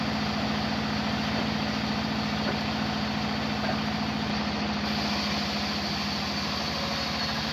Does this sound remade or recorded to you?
recorded